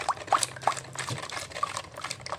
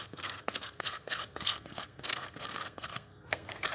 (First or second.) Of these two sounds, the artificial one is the second